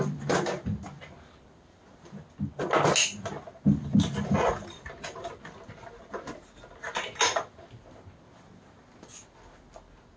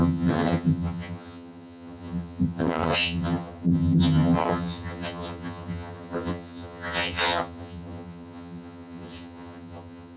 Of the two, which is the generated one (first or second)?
second